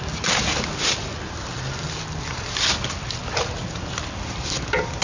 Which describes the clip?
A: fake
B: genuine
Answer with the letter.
B